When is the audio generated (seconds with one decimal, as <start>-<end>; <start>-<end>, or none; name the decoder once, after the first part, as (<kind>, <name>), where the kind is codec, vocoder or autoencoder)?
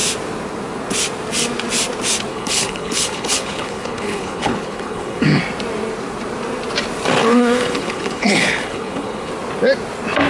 2.3-5.4 (codec, HILCodec); 7.2-9.3